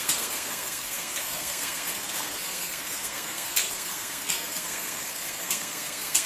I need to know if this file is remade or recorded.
remade